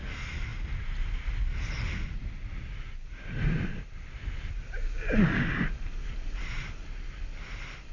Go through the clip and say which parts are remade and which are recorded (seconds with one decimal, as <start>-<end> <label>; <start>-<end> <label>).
0.0-7.9 recorded